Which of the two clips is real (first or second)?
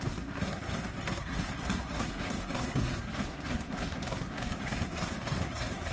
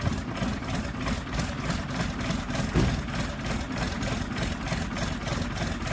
second